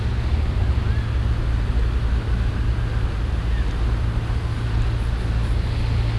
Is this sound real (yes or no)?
yes